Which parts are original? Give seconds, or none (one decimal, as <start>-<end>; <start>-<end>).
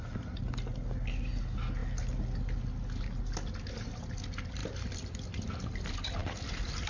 0.0-6.9